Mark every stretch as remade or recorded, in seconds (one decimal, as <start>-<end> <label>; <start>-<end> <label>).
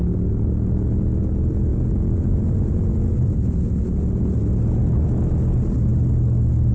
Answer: 0.0-1.7 recorded; 1.7-3.7 remade; 3.7-6.7 recorded